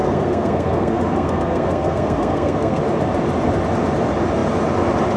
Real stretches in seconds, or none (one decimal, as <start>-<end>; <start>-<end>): 2.8-5.2